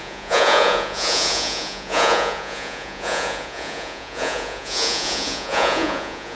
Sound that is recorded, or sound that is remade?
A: remade